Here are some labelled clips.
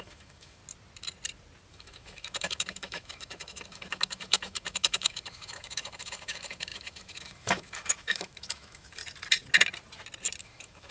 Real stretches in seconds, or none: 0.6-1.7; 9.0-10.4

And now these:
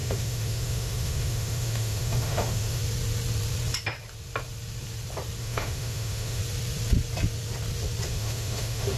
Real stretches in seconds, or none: 2.8-5.4; 6.4-8.1

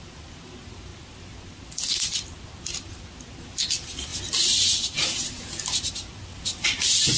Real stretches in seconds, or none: 0.0-7.2

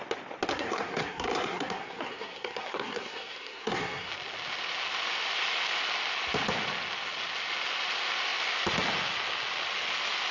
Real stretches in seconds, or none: 0.0-0.5; 4.1-10.3